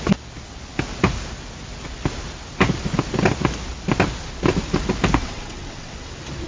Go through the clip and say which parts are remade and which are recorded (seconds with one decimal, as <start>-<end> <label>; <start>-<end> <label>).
0.0-5.2 recorded; 5.2-6.1 remade; 6.1-6.5 recorded